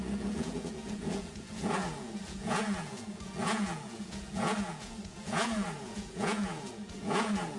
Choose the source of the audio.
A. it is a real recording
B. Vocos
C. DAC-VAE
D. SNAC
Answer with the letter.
B